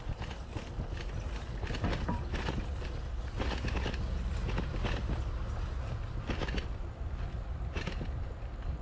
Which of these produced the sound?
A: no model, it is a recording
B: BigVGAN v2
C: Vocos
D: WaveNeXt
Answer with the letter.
A